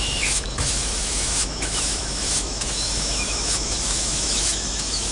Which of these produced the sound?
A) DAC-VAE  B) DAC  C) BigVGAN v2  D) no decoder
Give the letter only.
A